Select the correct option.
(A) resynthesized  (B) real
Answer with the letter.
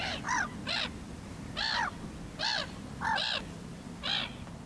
B